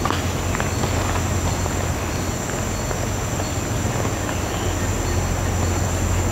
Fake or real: real